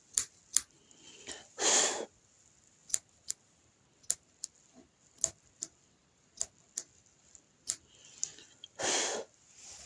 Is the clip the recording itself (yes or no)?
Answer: yes